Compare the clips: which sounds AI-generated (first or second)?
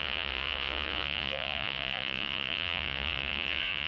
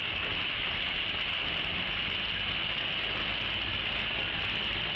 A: first